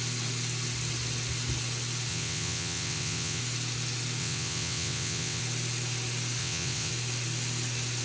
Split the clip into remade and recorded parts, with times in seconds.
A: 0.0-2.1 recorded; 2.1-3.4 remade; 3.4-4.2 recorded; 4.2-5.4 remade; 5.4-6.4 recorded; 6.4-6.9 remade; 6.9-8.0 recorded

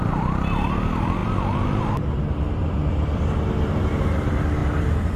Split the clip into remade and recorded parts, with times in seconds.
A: 0.0-5.2 recorded

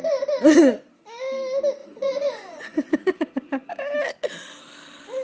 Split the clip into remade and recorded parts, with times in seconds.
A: 0.0-1.8 recorded; 1.8-3.2 remade; 3.2-5.2 recorded